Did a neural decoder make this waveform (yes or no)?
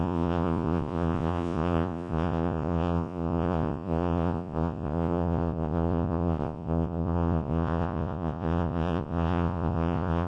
yes